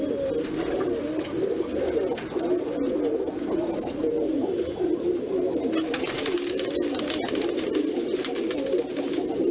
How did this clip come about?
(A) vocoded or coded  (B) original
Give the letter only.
B